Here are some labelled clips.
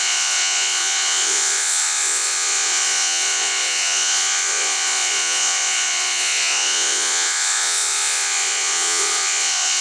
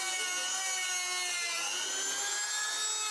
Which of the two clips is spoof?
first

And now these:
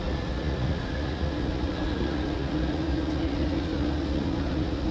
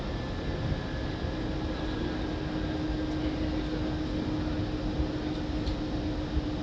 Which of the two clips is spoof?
first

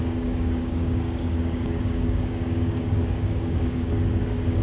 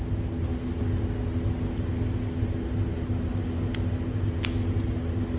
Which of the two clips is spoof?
first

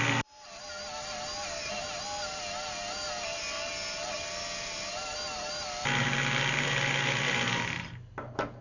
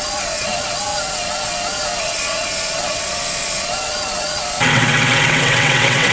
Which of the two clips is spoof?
second